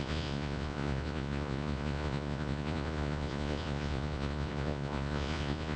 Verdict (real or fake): fake